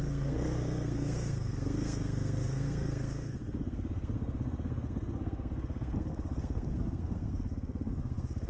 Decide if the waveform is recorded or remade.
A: remade